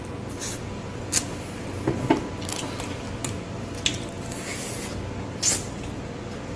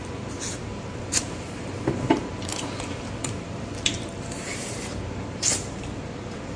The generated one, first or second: second